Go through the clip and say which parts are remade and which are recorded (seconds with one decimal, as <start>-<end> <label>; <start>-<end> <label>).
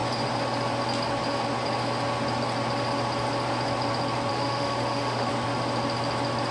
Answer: 0.0-4.3 recorded; 4.3-5.3 remade; 5.3-6.5 recorded